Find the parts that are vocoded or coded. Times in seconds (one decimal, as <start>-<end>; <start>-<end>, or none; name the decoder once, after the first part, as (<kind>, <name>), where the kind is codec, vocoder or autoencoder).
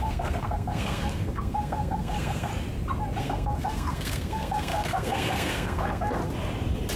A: 0.0-2.5 (codec, SNAC); 3.2-6.2